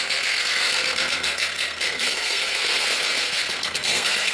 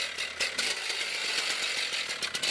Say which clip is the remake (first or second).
first